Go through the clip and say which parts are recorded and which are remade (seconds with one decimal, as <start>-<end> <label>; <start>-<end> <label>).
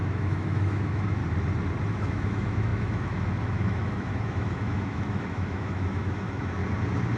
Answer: 0.0-1.2 remade; 1.2-1.9 recorded; 1.9-6.6 remade; 6.6-7.2 recorded